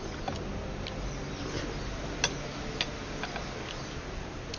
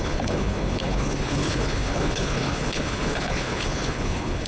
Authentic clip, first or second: first